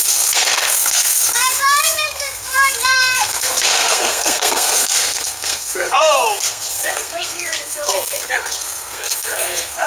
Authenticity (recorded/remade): remade